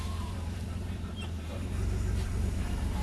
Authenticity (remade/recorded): remade